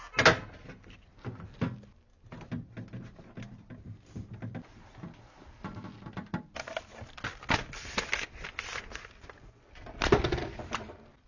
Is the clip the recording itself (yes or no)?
yes